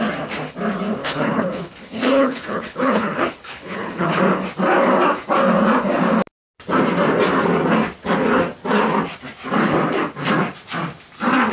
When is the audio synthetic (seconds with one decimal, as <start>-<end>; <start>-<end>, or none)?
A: 1.0-4.2

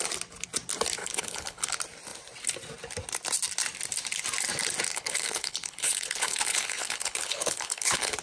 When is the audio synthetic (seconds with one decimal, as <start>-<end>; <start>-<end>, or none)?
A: 1.0-1.7; 4.9-8.2